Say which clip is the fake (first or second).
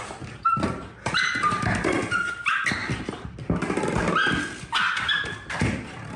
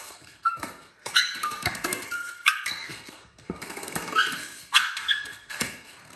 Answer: second